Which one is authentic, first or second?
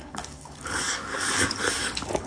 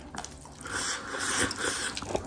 second